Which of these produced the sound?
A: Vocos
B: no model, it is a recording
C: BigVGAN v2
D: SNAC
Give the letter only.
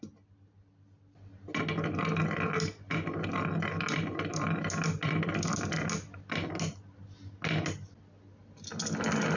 B